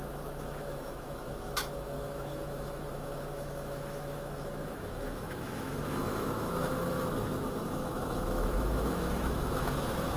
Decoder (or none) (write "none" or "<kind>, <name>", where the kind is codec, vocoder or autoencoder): autoencoder, DAC-VAE